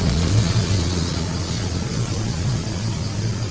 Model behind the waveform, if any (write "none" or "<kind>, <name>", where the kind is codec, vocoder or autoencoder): vocoder, Vocos